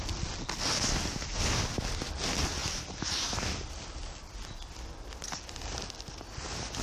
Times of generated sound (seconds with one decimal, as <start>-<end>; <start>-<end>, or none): none